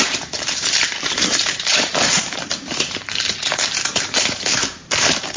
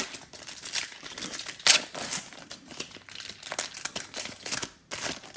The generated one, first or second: first